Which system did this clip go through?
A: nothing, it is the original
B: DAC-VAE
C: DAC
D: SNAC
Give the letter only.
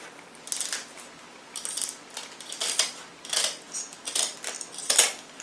A